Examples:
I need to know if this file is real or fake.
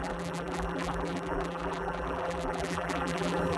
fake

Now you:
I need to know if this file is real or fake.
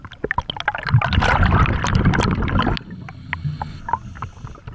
real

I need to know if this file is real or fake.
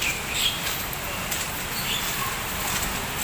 real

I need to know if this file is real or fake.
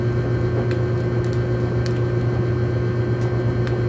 real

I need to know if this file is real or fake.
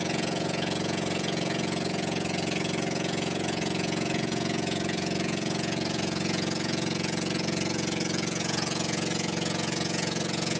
fake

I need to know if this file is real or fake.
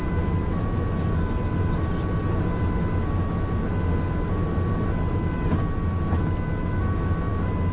real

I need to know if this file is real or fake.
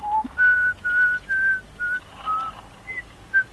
real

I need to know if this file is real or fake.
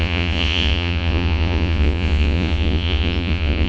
fake